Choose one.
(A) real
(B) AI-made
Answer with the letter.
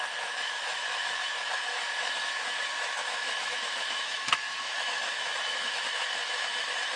B